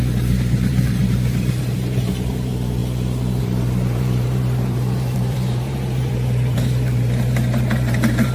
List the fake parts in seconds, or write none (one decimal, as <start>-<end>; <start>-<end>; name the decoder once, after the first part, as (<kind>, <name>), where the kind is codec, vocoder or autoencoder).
0.0-2.8 (vocoder, BigVGAN v2); 3.4-8.3